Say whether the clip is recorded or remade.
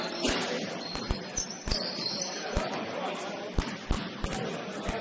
recorded